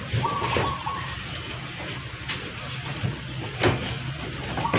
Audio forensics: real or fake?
real